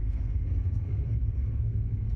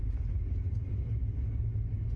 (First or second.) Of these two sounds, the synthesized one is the first